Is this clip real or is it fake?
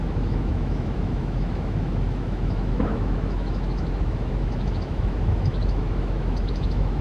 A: fake